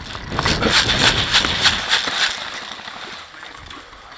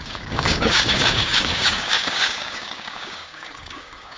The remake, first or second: second